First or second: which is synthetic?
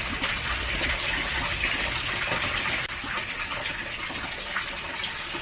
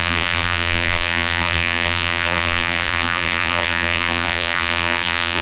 second